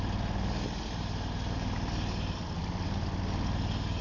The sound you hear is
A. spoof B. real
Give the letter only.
B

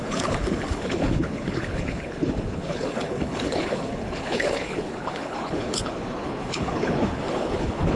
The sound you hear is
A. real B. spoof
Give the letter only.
B